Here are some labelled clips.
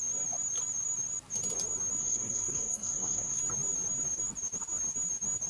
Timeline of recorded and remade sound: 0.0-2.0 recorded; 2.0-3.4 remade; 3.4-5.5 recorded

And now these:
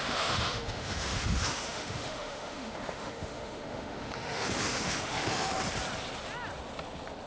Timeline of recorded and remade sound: 0.0-5.5 remade; 5.5-7.3 recorded

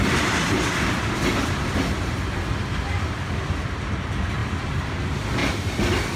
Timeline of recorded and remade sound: 0.0-4.4 recorded; 4.4-5.0 remade; 5.0-6.2 recorded

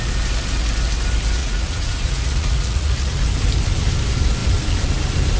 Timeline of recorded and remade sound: 0.0-1.4 recorded; 1.4-3.2 remade; 3.2-5.4 recorded

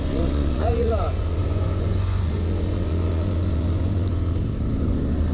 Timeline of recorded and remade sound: 0.0-4.1 remade; 4.1-4.8 recorded; 4.8-5.3 remade

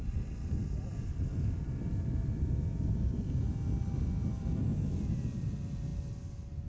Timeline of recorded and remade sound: 0.0-6.7 recorded